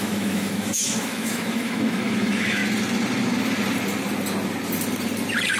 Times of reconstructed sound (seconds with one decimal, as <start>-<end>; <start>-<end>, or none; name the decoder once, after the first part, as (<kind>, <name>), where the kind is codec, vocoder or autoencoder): 0.0-2.6 (autoencoder, DAC-VAE)